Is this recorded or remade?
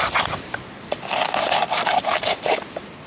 recorded